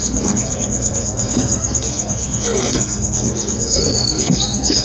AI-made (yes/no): yes